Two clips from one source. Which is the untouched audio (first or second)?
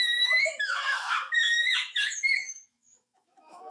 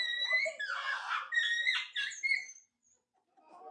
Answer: second